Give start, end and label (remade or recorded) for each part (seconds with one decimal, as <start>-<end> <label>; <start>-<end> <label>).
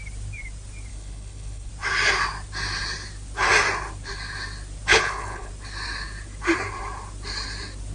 0.0-0.9 recorded; 0.9-1.7 remade; 1.7-4.9 recorded; 4.9-5.5 remade; 5.5-7.9 recorded